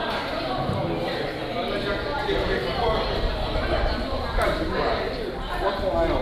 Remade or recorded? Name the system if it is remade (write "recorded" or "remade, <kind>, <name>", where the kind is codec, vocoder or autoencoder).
recorded